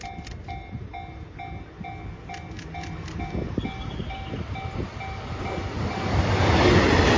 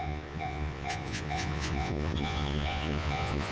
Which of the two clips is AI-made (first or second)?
second